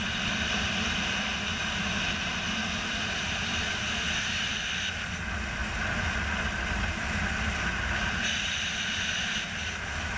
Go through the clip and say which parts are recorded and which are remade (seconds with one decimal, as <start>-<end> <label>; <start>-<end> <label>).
0.0-10.2 recorded

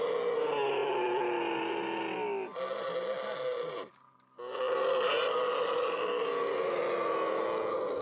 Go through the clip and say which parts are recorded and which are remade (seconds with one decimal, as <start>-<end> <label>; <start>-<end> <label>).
0.0-8.0 recorded